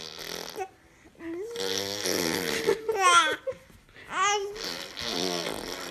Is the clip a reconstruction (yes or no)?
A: no